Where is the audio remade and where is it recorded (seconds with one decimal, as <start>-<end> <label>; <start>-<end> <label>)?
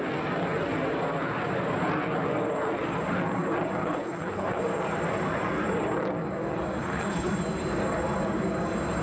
0.0-3.8 recorded; 3.8-4.6 remade; 4.6-6.8 recorded; 6.8-7.3 remade; 7.3-9.0 recorded